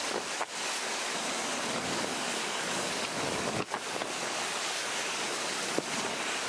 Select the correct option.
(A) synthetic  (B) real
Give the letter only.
A